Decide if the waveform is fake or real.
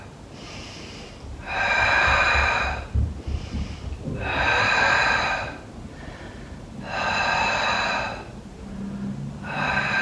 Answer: real